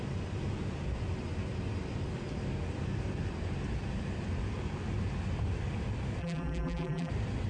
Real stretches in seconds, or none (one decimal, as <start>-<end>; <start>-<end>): 0.0-6.2; 7.1-7.5